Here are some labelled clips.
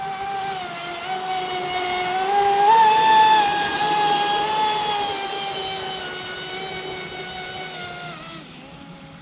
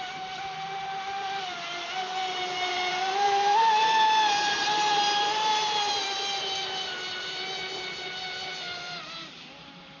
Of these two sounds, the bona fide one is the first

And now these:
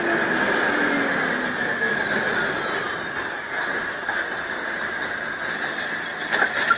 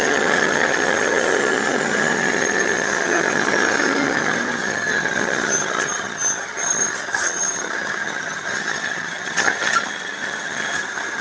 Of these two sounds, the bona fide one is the first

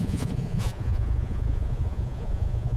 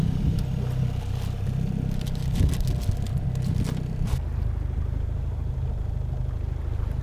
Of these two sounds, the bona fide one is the second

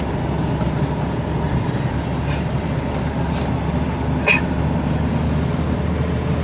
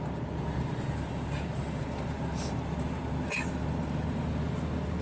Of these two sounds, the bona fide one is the second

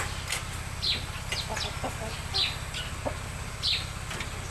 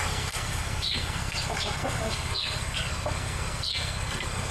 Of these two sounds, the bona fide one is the first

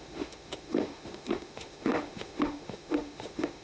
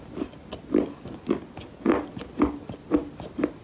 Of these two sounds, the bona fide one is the second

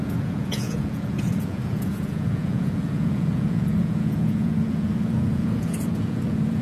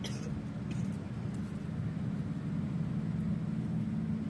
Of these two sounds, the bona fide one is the second